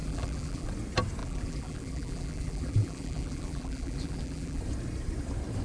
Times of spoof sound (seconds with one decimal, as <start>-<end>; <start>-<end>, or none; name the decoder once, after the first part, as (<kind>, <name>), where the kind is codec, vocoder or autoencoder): 0.0-0.7 (vocoder, BigVGAN v2); 1.2-4.6